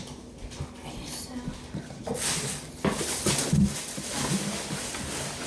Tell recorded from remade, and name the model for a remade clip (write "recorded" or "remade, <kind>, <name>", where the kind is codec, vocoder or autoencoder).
recorded